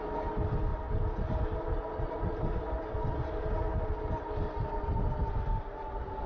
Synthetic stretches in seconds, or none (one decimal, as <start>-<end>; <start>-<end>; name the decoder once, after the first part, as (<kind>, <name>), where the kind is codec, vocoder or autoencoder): none